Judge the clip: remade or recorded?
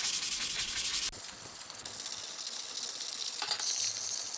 recorded